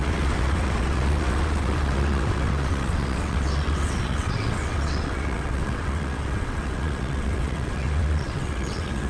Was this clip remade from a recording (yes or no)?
yes